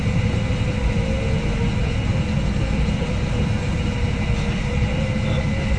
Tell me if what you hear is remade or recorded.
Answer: recorded